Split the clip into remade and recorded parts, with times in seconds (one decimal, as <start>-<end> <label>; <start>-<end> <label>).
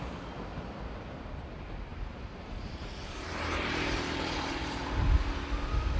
0.0-1.9 recorded; 1.9-5.2 remade; 5.2-6.0 recorded